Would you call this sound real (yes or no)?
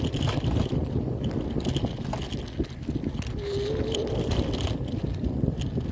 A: yes